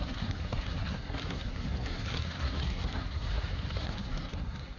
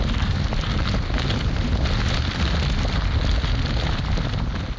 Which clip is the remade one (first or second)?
first